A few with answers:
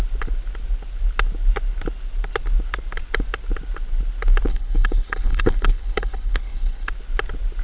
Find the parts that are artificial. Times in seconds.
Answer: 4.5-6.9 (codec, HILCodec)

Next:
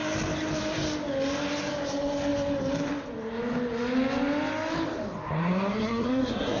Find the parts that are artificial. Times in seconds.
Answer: 5.4-6.6 (codec, SNAC)

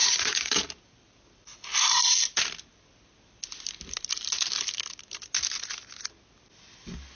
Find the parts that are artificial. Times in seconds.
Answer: 0.0-0.7 (codec, DAC)

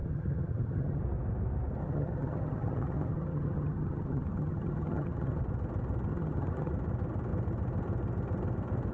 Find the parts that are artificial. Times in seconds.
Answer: 0.0-1.0 (vocoder, HiFi-GAN); 1.8-5.4; 6.1-6.7

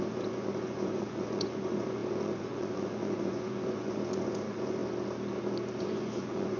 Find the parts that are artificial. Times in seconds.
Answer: 0.0-4.8 (vocoder, Vocos); 5.8-6.6

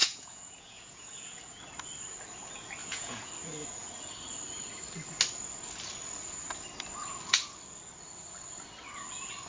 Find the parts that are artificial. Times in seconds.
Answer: 0.0-1.6 (vocoder, Vocos); 2.8-3.3